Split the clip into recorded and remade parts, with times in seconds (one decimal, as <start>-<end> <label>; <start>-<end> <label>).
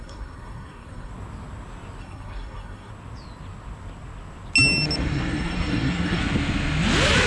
0.0-1.1 remade; 1.1-2.0 recorded; 2.0-2.9 remade; 2.9-5.0 recorded; 5.0-6.2 remade; 6.2-7.3 recorded